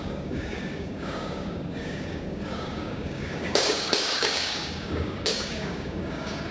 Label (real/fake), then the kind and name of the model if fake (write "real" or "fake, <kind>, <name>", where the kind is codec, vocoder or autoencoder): fake, codec, DAC